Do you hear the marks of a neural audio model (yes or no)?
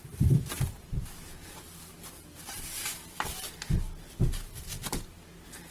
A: no